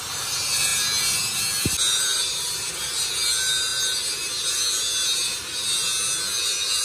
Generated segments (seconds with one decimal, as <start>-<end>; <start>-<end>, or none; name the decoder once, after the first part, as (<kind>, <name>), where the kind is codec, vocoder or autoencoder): 2.1-2.8 (vocoder, BigVGAN v2)